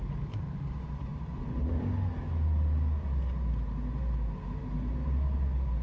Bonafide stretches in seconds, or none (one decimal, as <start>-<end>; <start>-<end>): 0.0-5.8